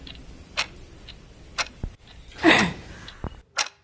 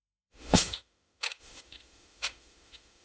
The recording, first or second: first